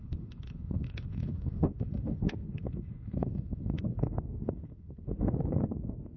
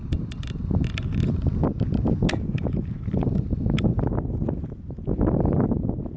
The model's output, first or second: first